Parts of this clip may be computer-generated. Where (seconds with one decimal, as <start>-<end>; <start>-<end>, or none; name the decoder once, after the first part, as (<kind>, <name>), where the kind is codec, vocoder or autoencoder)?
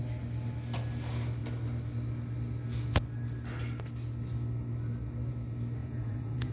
5.8-6.5 (vocoder, Vocos)